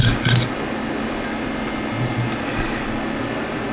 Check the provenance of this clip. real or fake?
real